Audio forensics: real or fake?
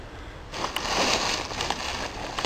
real